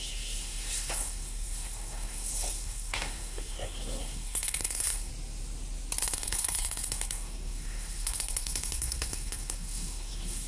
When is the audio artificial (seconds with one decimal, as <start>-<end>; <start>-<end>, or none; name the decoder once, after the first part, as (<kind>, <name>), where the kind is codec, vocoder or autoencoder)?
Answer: 0.0-5.1 (codec, SNAC); 6.0-10.5